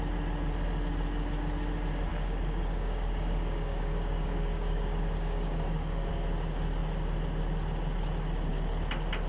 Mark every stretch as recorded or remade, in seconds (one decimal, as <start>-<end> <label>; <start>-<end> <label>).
0.0-2.1 recorded; 2.1-6.1 remade; 6.1-9.3 recorded